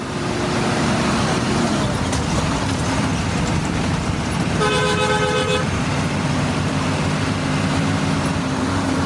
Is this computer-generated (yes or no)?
yes